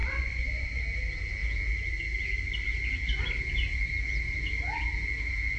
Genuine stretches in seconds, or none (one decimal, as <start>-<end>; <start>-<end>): 0.8-5.6